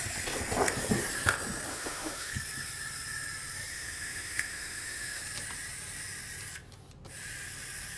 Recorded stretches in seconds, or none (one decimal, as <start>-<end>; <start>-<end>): 0.0-1.7; 2.3-3.7; 5.2-8.0